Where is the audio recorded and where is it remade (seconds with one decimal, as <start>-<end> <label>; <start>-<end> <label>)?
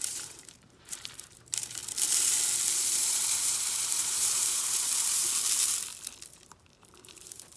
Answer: 0.0-1.8 remade; 1.8-2.7 recorded; 2.7-5.2 remade; 5.2-6.3 recorded; 6.3-7.6 remade